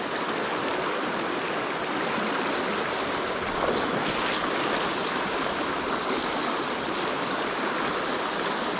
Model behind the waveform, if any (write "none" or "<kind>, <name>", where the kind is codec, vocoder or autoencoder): none